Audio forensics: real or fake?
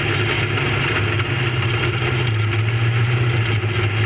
real